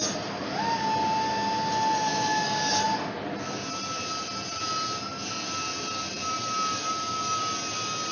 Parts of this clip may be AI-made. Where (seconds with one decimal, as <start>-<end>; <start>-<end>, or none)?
2.1-2.7